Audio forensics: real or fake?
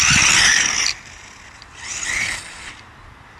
real